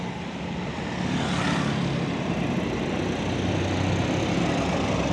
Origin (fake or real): real